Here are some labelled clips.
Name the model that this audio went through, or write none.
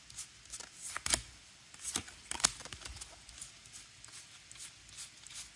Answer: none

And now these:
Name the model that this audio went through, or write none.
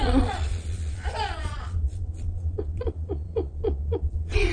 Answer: vocoder, Vocos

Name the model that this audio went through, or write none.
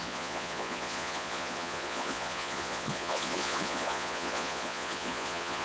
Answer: vocoder, Vocos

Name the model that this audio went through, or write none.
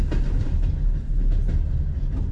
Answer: none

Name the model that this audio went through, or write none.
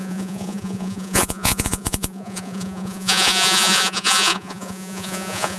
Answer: vocoder, Vocos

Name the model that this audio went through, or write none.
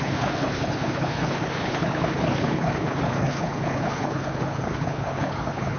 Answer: codec, HILCodec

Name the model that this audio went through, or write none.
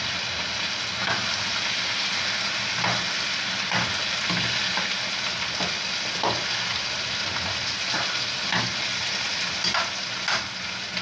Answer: none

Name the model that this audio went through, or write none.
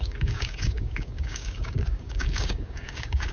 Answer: codec, DAC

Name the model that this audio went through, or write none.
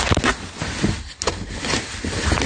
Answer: none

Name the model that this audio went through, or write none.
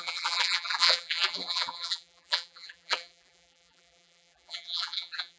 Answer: vocoder, BigVGAN v2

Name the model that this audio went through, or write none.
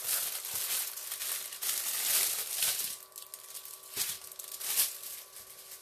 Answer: none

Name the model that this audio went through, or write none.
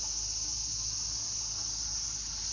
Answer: none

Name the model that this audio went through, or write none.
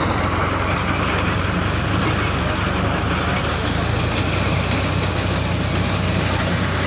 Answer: none